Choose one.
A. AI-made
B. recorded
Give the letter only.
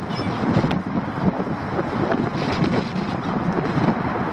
B